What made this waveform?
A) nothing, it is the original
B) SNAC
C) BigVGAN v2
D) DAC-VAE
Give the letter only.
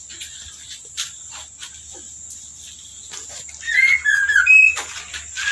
A